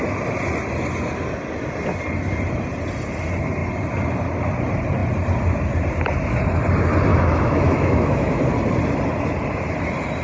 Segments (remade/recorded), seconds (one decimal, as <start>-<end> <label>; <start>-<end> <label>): 0.0-7.1 recorded; 7.1-8.4 remade; 8.4-10.2 recorded